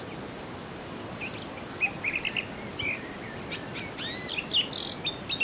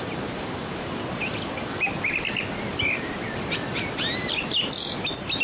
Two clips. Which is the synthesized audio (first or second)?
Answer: second